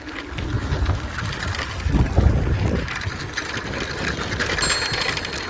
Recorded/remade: recorded